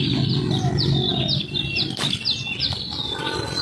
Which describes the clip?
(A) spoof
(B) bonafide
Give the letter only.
B